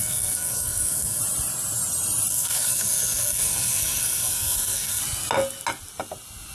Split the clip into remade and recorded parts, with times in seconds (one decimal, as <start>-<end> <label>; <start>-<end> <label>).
0.0-1.2 remade; 1.2-2.3 recorded; 2.3-5.0 remade; 5.0-6.5 recorded